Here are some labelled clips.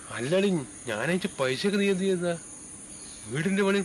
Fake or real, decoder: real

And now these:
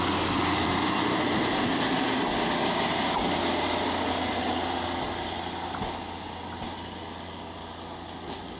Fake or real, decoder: real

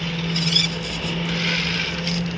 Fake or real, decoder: real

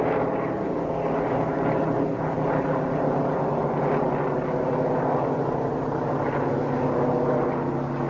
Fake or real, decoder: real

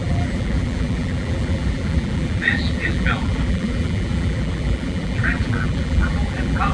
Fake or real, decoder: fake, vocoder, BigVGAN v2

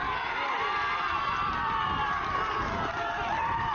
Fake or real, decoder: fake, vocoder, BigVGAN v2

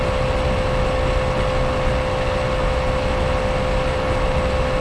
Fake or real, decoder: real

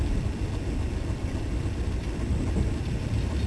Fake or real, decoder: real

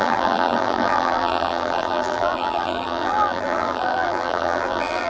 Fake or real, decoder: fake, vocoder, BigVGAN v2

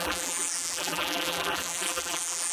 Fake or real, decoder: fake, vocoder, BigVGAN v2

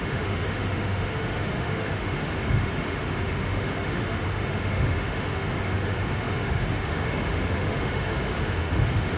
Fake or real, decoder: fake, autoencoder, DAC-VAE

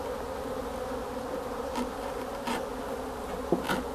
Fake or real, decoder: real